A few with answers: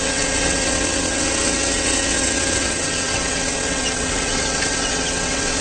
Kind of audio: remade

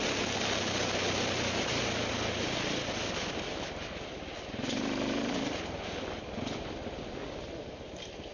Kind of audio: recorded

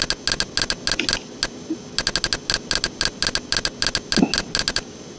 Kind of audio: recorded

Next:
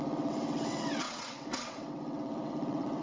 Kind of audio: remade